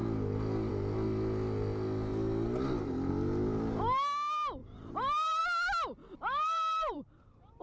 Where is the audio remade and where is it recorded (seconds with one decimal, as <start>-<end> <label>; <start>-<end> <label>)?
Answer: 0.0-4.6 recorded; 4.6-5.4 remade; 5.4-6.0 recorded; 6.0-7.6 remade